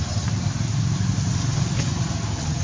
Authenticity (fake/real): real